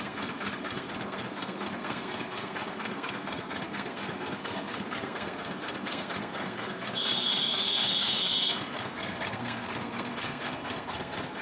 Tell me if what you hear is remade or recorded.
remade